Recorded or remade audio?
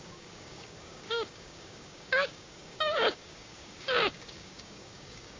remade